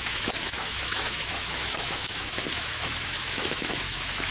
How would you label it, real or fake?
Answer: fake